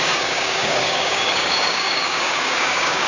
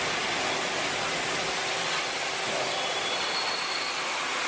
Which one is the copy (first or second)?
first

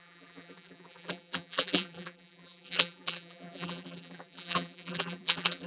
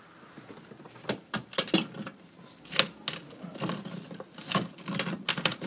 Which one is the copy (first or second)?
first